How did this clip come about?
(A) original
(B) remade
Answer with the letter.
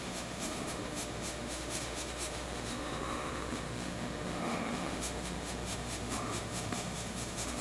B